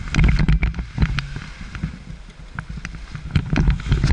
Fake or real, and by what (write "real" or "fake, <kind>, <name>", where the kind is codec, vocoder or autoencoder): real